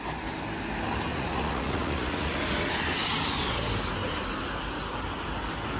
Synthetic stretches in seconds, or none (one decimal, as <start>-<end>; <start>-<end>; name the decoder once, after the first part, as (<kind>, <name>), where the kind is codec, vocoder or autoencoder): 1.1-2.4 (vocoder, Vocos)